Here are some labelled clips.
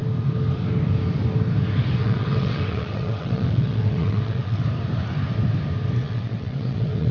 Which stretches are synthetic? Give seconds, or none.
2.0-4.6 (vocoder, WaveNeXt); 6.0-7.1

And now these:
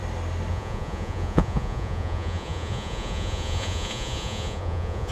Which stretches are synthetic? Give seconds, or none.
0.5-5.1 (vocoder, Vocos)

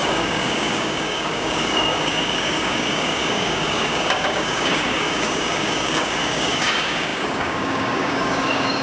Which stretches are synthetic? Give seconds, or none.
0.0-8.8 (codec, DAC)

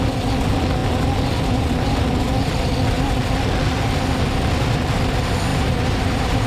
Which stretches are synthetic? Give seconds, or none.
5.5-6.5 (vocoder, BigVGAN v2)

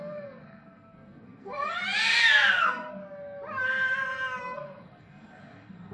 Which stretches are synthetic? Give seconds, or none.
0.0-1.8 (codec, SNAC); 2.5-3.0; 4.4-5.9

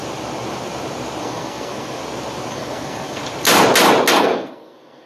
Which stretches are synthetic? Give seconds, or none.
1.2-2.0 (codec, SNAC); 2.5-3.2; 4.1-5.1